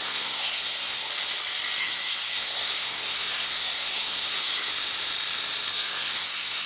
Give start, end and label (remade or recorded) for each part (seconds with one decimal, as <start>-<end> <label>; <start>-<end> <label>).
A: 0.0-1.1 remade; 1.1-1.8 recorded; 1.8-4.7 remade; 4.7-5.7 recorded; 5.7-6.7 remade